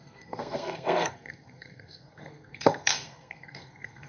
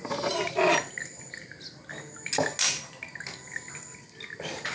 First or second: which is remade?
first